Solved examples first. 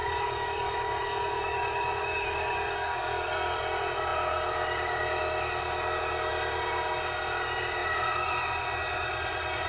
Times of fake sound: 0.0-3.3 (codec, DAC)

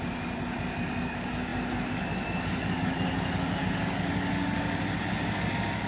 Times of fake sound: 0.0-5.9 (codec, DAC)

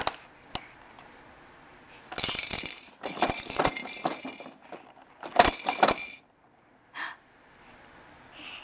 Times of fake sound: none

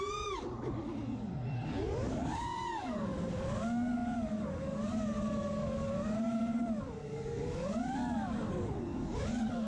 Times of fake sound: 0.0-9.7 (codec, DAC)

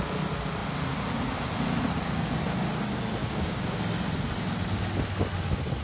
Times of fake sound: 3.2-3.8 (codec, DAC)

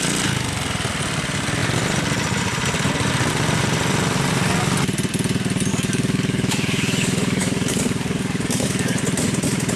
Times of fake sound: 5.7-9.0 (codec, DAC)

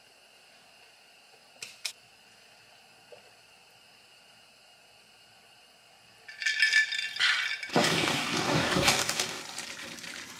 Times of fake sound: 7.7-9.4 (codec, DAC)

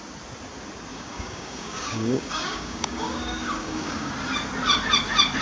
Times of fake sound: 0.9-4.1 (codec, DAC)